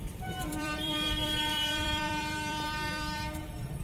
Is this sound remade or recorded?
remade